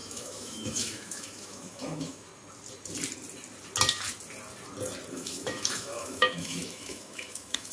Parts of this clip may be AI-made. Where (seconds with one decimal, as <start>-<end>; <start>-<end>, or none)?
0.0-2.3; 5.1-7.7